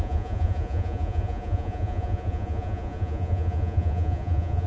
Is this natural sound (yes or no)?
no